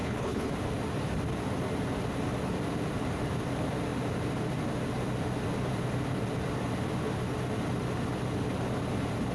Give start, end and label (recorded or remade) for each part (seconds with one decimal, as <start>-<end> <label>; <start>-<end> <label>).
0.0-0.5 remade; 0.5-9.3 recorded